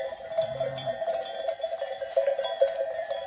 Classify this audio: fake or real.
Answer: real